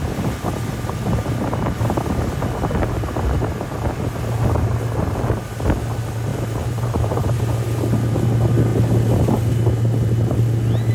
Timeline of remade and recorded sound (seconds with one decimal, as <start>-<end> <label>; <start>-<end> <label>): 0.0-6.3 recorded; 6.3-7.4 remade; 7.4-10.9 recorded

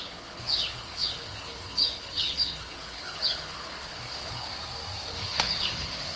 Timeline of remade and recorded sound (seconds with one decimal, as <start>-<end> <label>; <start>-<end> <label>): 0.0-4.5 remade; 4.5-5.1 recorded; 5.1-6.2 remade

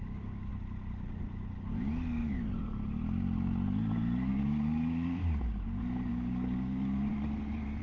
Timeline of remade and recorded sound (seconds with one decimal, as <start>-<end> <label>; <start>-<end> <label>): 0.0-0.5 remade; 0.5-4.3 recorded; 4.3-5.2 remade; 5.2-6.1 recorded; 6.1-7.1 remade; 7.1-7.8 recorded

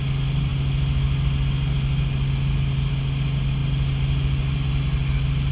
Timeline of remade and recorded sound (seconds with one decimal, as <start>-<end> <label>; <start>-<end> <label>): 0.0-5.5 recorded

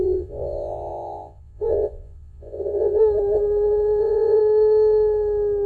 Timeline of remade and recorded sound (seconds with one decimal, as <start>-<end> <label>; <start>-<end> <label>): 0.0-3.0 remade; 3.0-4.0 recorded; 4.0-4.4 remade; 4.4-5.7 recorded